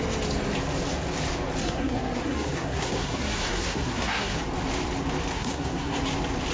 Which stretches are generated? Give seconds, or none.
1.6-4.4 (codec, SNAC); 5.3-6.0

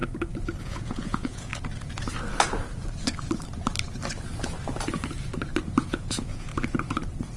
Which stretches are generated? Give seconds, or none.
0.6-1.5 (vocoder, Vocos); 5.9-6.5

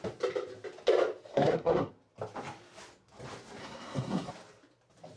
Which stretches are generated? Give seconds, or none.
1.3-1.9 (codec, SNAC); 3.6-4.3

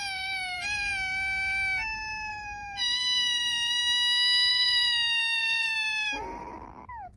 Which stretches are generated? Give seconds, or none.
0.0-0.9 (vocoder, BigVGAN v2); 2.3-3.8; 4.5-6.5

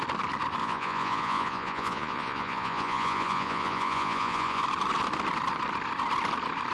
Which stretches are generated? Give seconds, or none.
0.6-4.6 (vocoder, Vocos)

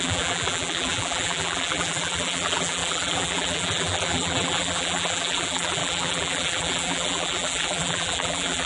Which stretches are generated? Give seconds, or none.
0.0-8.7 (vocoder, BigVGAN v2)

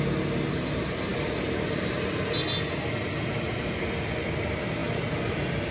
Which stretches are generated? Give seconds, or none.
none

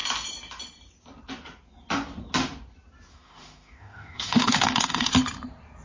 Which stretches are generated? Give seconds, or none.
3.1-5.1 (autoencoder, DAC-VAE)